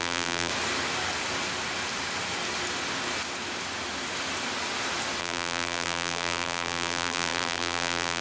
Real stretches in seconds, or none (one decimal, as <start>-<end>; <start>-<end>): 0.5-5.2